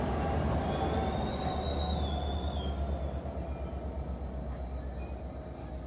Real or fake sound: real